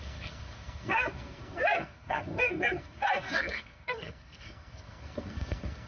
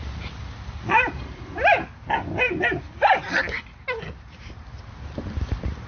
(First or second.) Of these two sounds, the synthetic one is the first